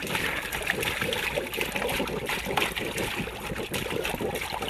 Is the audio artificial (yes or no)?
no